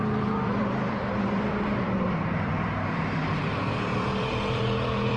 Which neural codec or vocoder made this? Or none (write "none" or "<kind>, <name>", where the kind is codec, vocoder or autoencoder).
vocoder, BigVGAN v2